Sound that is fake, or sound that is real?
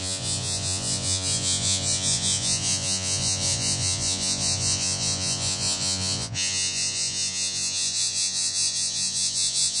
fake